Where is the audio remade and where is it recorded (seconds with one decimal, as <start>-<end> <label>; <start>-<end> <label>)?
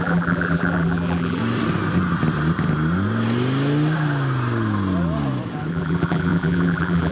0.0-1.4 remade; 1.4-5.7 recorded; 5.7-7.1 remade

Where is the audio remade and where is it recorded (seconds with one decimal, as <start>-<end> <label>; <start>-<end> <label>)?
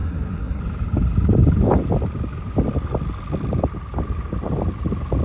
0.0-0.6 remade; 0.6-5.2 recorded